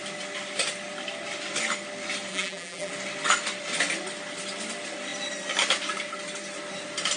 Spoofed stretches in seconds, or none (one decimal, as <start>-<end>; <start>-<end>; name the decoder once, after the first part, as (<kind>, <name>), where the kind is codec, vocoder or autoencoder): 2.3-2.9 (vocoder, BigVGAN v2)